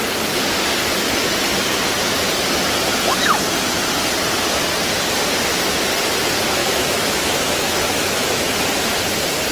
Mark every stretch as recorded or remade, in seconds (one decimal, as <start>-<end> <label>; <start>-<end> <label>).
0.0-6.6 recorded; 6.6-8.5 remade; 8.5-9.5 recorded